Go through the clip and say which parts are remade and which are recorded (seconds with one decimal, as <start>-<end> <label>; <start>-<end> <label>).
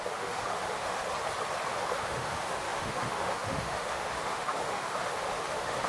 0.0-1.1 remade; 1.1-1.7 recorded; 1.7-5.9 remade